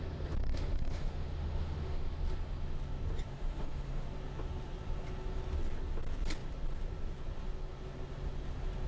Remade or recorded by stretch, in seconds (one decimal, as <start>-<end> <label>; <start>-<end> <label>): 0.0-0.4 recorded; 0.4-2.1 remade; 2.1-3.3 recorded; 3.3-4.0 remade; 4.0-8.9 recorded